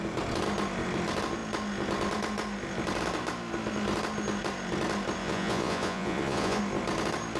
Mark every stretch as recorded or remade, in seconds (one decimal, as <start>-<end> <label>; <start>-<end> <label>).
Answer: 0.0-5.2 recorded; 5.2-6.6 remade; 6.6-7.4 recorded